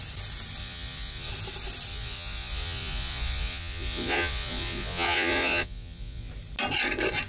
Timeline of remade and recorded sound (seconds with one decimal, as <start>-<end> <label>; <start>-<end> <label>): 0.0-0.6 recorded; 0.6-1.3 remade; 1.3-1.9 recorded; 1.9-6.3 remade; 6.3-7.3 recorded